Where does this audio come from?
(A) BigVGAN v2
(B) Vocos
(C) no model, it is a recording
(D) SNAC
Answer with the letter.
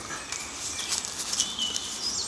C